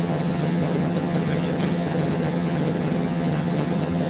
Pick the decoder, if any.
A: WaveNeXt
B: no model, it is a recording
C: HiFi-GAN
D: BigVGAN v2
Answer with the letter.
C